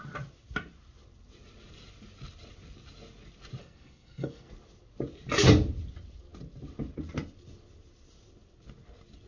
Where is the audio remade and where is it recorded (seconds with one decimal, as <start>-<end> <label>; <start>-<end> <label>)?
0.0-3.6 recorded; 3.6-4.5 remade; 4.5-9.3 recorded